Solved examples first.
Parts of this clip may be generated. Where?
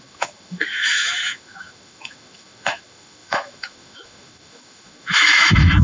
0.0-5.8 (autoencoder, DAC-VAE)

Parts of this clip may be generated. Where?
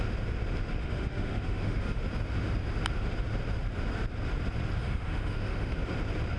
0.8-2.0 (autoencoder, DAC-VAE); 4.8-5.8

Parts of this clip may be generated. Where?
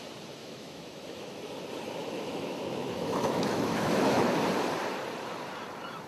0.4-1.4 (autoencoder, DAC-VAE); 2.0-4.3